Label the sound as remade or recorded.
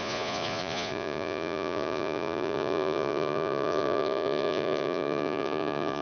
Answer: remade